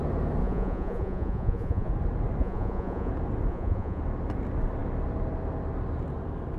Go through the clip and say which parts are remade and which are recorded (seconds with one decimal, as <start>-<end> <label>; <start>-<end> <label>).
0.0-0.4 recorded; 0.4-1.9 remade; 1.9-2.4 recorded; 2.4-3.1 remade; 3.1-3.5 recorded; 3.5-4.0 remade; 4.0-6.6 recorded